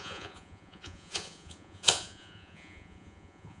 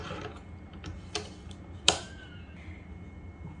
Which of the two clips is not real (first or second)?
first